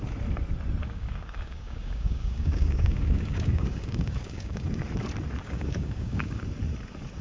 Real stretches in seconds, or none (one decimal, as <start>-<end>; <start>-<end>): 0.0-0.8; 4.8-5.4; 6.4-7.2